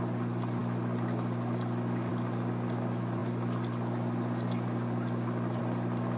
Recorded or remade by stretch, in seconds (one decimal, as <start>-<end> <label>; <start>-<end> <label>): 0.0-6.2 recorded